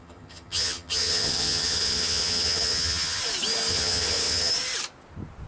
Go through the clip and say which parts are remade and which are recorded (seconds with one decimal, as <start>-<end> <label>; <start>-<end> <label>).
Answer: 0.0-3.2 remade; 3.2-3.7 recorded; 3.7-4.5 remade; 4.5-5.5 recorded